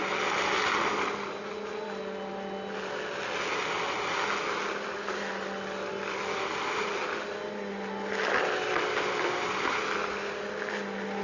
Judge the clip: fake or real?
real